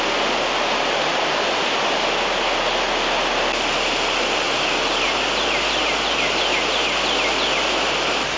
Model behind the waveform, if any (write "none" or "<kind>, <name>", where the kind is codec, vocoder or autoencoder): none